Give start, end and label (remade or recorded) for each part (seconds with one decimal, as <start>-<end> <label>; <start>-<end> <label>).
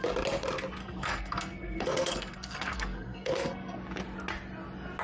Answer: 0.0-0.8 recorded; 0.8-3.8 remade; 3.8-5.0 recorded